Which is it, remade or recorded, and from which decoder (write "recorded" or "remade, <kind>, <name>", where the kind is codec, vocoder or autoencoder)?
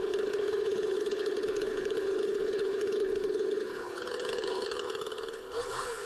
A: remade, codec, HILCodec